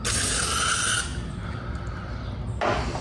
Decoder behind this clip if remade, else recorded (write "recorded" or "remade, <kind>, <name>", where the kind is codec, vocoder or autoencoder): recorded